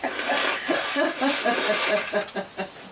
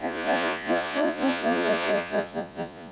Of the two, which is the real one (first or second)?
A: first